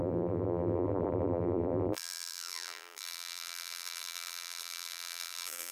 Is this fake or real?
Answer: fake